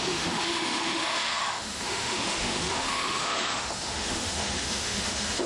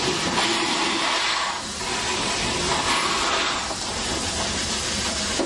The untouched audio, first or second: second